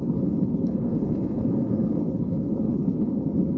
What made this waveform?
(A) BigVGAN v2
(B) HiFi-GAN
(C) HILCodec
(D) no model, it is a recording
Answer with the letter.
C